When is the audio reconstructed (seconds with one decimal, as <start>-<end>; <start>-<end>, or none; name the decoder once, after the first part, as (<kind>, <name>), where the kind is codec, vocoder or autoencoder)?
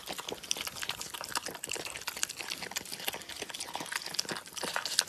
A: none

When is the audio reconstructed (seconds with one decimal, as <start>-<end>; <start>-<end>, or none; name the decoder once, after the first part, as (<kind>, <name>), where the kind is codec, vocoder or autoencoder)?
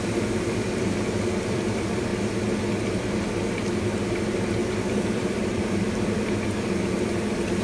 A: 0.0-2.1 (vocoder, BigVGAN v2); 4.9-7.6